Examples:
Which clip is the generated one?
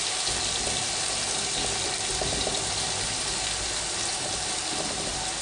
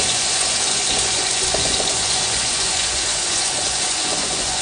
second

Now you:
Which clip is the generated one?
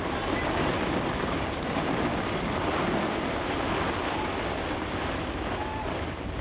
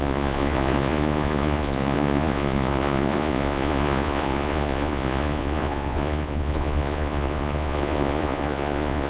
second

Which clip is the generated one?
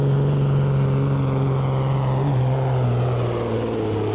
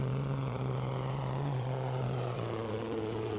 second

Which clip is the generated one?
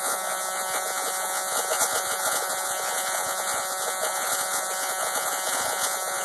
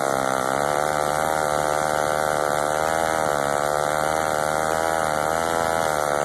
first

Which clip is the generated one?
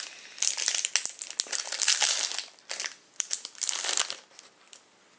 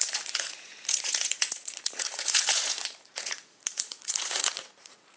second